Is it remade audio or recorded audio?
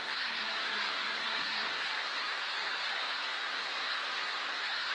remade